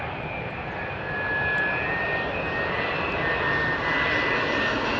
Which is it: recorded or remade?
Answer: recorded